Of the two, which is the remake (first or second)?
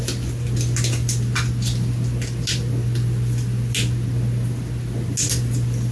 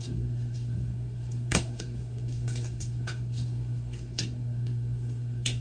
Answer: second